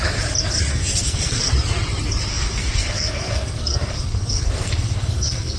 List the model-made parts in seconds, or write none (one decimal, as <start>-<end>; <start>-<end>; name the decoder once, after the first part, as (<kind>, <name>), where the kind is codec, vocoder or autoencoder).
0.7-1.5 (codec, SNAC); 2.3-5.6